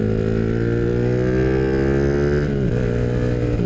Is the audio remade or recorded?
recorded